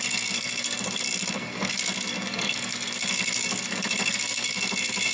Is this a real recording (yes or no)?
no